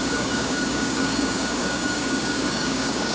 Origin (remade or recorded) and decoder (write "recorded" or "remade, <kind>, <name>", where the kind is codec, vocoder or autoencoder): remade, codec, DAC